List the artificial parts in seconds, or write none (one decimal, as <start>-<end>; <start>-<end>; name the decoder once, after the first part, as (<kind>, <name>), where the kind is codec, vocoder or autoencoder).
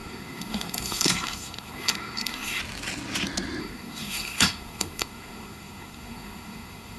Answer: 0.0-2.6 (codec, SNAC); 3.6-7.0